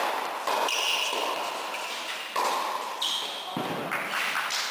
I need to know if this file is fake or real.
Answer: real